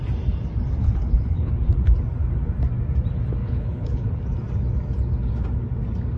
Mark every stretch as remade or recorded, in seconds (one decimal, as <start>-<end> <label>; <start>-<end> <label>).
0.0-0.8 recorded; 0.8-1.5 remade; 1.5-3.4 recorded; 3.4-4.2 remade; 4.2-6.2 recorded